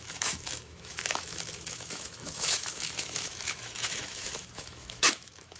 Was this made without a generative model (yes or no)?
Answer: no